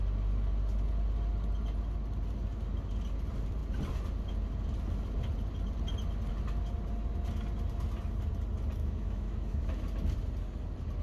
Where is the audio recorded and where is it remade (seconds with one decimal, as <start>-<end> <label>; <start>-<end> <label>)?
0.0-8.8 recorded; 8.8-9.8 remade; 9.8-11.0 recorded